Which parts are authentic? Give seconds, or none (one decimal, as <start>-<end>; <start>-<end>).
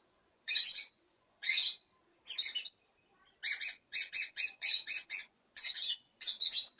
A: 1.6-3.6